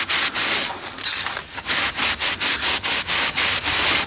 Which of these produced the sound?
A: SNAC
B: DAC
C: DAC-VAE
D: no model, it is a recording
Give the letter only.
D